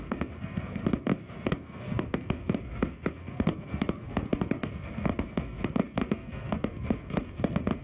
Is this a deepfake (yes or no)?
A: yes